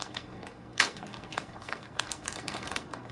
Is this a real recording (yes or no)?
no